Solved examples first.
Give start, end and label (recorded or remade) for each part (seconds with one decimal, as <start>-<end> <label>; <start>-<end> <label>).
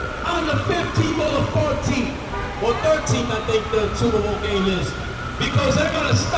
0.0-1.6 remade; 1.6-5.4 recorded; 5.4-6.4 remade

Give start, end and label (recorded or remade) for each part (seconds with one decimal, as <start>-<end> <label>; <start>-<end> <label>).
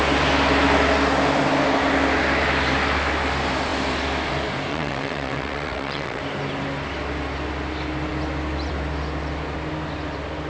0.0-4.7 recorded; 4.7-6.2 remade; 6.2-10.5 recorded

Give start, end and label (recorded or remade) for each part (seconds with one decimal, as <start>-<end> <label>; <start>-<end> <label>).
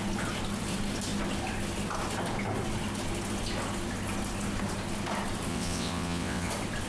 0.0-5.5 recorded; 5.5-6.5 remade; 6.5-6.9 recorded